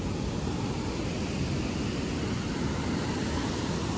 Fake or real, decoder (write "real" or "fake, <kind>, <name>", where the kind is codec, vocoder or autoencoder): real